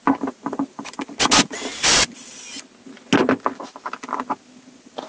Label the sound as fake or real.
real